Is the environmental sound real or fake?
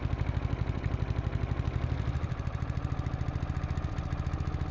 real